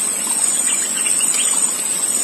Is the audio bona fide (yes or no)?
no